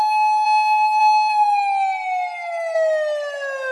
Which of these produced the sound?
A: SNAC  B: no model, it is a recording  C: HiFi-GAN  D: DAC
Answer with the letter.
B